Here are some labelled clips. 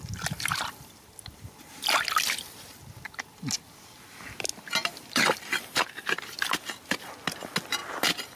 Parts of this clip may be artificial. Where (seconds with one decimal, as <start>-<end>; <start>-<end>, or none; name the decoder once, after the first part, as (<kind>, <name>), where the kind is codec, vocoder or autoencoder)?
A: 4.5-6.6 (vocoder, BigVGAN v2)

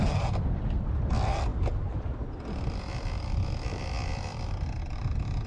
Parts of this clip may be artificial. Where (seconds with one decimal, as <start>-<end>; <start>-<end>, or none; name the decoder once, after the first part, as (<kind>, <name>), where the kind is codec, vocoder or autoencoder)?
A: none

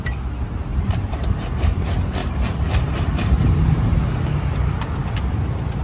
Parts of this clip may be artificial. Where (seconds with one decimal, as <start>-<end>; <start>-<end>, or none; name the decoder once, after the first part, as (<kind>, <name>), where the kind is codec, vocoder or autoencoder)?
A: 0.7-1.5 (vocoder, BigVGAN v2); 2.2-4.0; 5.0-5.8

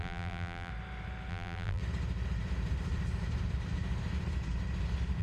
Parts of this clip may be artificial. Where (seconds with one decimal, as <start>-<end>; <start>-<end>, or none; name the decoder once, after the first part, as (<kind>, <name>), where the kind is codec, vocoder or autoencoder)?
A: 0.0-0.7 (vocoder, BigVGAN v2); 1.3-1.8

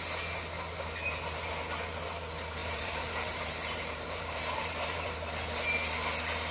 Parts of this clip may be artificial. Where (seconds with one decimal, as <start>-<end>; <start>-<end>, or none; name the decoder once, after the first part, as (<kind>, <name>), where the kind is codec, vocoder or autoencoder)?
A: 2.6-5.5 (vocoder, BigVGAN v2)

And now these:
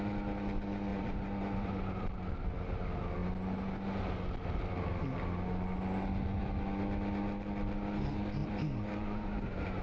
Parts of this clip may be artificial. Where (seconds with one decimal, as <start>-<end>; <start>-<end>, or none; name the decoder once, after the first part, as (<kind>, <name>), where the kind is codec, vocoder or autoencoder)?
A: 0.9-2.3 (vocoder, BigVGAN v2); 8.4-9.8